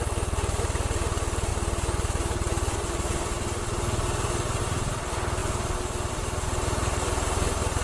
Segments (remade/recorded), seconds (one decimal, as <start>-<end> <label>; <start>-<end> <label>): 0.0-7.8 recorded